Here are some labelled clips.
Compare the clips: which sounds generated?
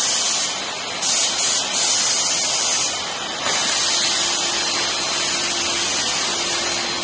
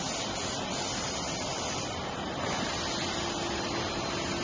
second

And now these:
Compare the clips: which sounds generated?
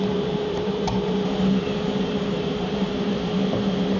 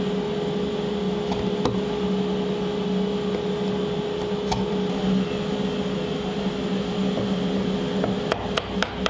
first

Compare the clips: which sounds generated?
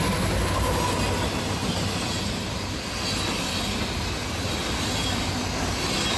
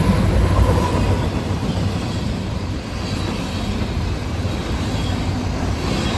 second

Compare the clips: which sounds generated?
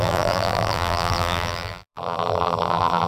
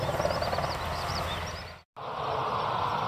first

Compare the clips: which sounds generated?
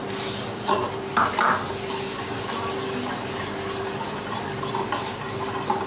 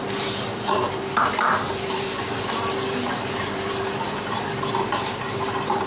second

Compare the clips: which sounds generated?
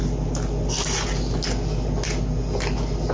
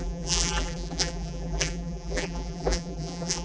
second